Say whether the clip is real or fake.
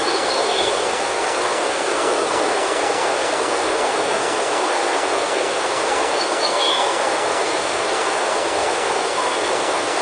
fake